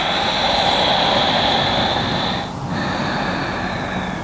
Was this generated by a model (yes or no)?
no